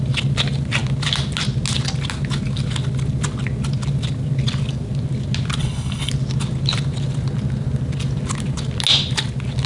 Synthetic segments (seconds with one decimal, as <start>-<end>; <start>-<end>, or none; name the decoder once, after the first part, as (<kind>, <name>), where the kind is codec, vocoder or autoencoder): 5.6-6.1 (codec, HILCodec)